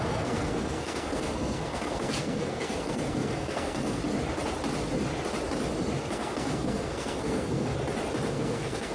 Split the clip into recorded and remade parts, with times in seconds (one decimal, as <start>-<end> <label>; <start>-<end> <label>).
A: 0.0-4.0 remade; 4.0-6.0 recorded; 6.0-7.7 remade; 7.7-8.3 recorded; 8.3-8.9 remade